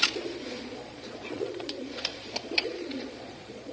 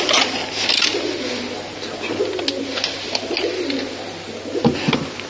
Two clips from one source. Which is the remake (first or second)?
first